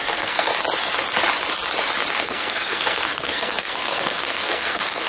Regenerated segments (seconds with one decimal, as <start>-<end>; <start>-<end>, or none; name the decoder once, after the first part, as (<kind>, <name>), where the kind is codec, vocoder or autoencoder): 0.0-0.5 (codec, SNAC); 2.1-5.1